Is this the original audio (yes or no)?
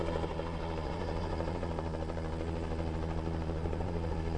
no